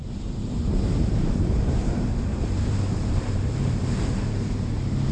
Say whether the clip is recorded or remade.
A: remade